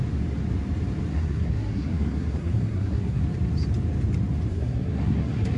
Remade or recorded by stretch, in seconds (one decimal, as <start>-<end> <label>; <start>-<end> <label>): 0.0-1.1 recorded; 1.1-3.2 remade; 3.2-4.5 recorded; 4.5-5.6 remade